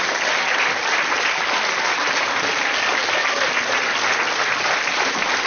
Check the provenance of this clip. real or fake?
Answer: real